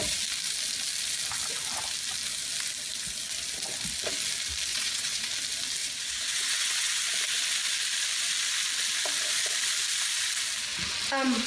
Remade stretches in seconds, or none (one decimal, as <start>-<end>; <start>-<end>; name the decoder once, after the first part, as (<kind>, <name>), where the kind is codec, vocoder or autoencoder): 4.7-5.3 (vocoder, WaveNeXt); 5.8-6.9